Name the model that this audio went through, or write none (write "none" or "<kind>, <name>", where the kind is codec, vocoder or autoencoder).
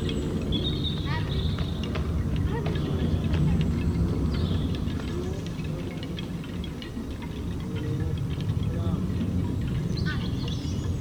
none